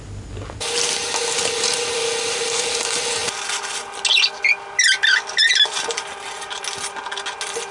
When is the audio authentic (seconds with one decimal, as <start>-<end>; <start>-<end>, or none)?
0.0-7.7